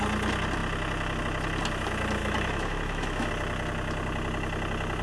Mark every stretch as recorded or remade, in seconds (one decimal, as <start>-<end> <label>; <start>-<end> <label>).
0.0-2.2 recorded; 2.2-3.3 remade; 3.3-5.0 recorded